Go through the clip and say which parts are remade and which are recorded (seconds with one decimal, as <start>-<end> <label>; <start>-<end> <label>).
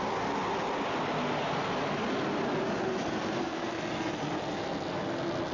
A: 0.0-5.5 recorded